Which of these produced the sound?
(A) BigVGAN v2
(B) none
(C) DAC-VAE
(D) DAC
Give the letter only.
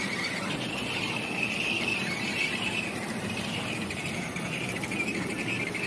A